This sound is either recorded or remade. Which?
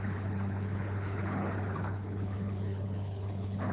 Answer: remade